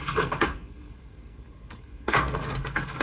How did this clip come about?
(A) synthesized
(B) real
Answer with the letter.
A